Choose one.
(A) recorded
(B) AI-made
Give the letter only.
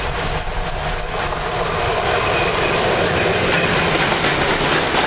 A